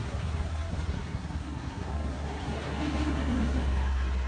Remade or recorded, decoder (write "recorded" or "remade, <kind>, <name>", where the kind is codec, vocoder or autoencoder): remade, codec, SNAC